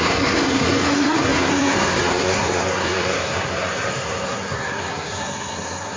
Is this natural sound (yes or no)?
no